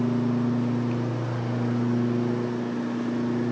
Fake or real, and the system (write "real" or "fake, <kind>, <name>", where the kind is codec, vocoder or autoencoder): real